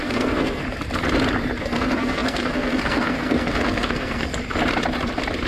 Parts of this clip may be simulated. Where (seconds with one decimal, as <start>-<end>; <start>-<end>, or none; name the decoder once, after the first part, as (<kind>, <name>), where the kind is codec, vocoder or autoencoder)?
0.0-0.6 (codec, SNAC); 1.6-4.3